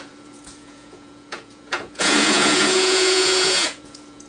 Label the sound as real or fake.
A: fake